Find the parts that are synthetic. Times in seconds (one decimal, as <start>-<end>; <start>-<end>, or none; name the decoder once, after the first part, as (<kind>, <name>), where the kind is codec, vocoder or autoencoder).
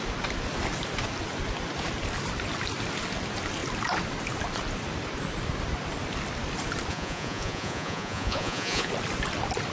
6.9-8.9 (vocoder, Vocos)